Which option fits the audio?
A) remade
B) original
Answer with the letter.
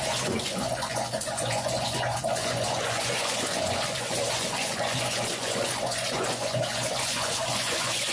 A